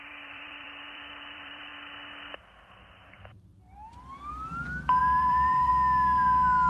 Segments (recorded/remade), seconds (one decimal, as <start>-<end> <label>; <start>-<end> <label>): 0.0-1.7 remade; 1.7-2.9 recorded; 2.9-3.5 remade; 3.5-5.0 recorded; 5.0-5.7 remade; 5.7-6.7 recorded